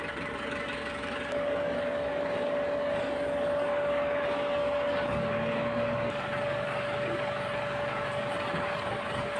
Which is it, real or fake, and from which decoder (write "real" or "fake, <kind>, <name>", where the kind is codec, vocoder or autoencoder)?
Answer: fake, codec, DAC